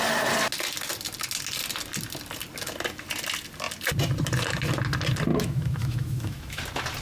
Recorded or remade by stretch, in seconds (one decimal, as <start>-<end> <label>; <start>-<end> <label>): 0.0-5.3 recorded; 5.3-6.6 remade; 6.6-7.0 recorded